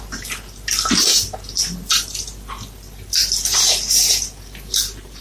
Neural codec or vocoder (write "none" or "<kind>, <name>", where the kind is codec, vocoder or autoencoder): none